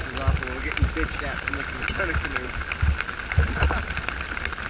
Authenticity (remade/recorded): recorded